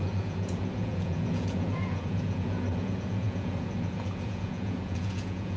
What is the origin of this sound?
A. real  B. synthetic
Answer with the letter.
B